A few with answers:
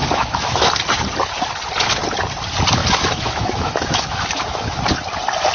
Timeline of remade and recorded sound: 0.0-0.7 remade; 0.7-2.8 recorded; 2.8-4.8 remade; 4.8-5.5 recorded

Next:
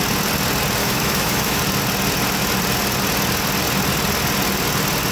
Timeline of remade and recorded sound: 0.0-0.8 recorded; 0.8-1.6 remade; 1.6-5.1 recorded